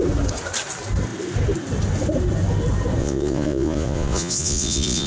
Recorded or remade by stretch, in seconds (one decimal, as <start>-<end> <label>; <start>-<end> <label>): 0.0-3.0 recorded; 3.0-5.1 remade